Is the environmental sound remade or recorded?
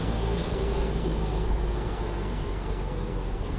remade